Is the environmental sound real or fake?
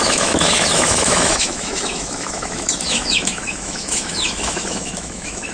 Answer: fake